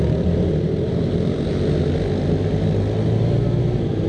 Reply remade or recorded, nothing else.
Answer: recorded